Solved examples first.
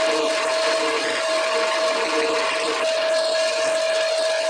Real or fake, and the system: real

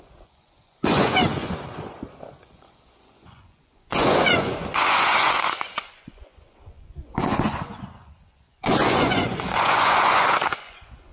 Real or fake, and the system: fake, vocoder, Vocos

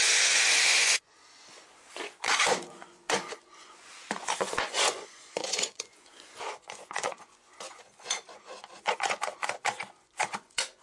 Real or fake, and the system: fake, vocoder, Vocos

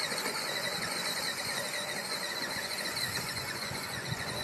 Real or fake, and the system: fake, vocoder, Vocos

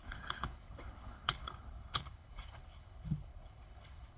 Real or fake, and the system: fake, codec, HILCodec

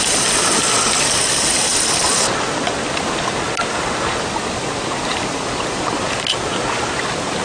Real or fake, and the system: real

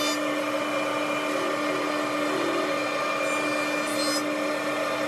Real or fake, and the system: real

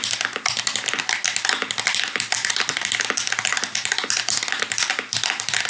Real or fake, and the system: real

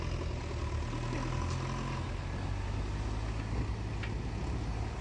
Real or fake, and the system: real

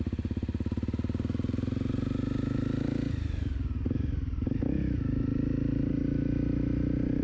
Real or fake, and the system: real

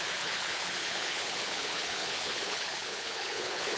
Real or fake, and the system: fake, codec, HILCodec